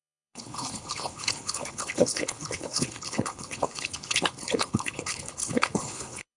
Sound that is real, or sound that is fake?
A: fake